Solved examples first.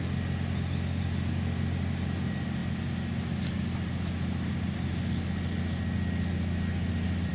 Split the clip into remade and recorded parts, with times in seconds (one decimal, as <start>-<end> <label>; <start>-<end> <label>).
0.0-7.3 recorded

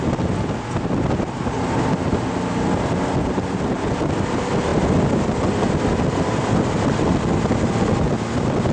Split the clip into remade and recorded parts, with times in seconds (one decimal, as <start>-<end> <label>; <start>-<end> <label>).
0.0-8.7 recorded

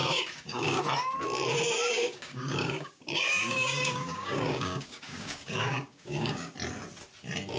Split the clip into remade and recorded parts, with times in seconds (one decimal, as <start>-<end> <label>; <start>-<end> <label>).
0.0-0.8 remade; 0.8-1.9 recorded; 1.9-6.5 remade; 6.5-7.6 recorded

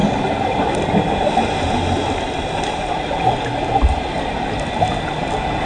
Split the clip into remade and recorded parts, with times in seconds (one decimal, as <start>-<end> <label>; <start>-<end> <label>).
0.0-5.7 recorded

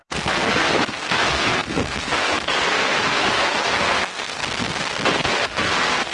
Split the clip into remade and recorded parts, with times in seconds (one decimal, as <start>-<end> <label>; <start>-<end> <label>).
0.0-4.4 remade; 4.4-5.1 recorded; 5.1-6.1 remade